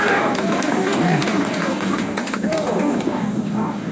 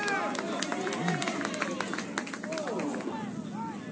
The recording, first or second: second